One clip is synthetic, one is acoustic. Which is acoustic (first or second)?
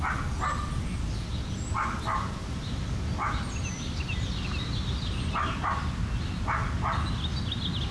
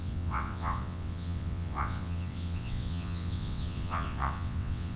first